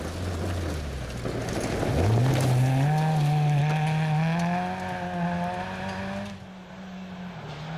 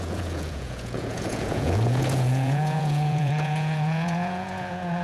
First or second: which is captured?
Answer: first